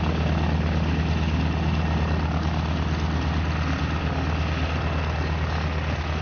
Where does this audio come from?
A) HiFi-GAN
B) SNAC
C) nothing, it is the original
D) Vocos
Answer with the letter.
C